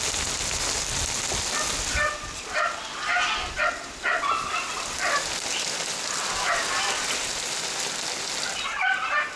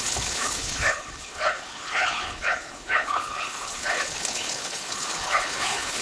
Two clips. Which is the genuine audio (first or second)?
first